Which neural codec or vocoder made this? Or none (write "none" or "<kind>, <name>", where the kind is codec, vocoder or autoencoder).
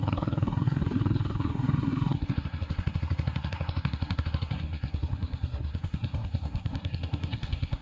codec, SNAC